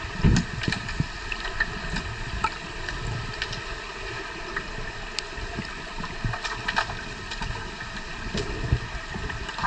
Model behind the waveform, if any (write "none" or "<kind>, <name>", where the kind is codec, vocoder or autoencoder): none